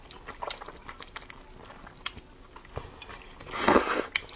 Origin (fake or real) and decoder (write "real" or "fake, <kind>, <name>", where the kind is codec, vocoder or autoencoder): real